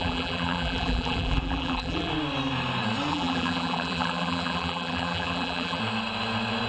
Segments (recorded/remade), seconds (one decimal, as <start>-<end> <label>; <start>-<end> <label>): 0.0-2.1 remade; 2.1-3.1 recorded; 3.1-5.8 remade; 5.8-6.7 recorded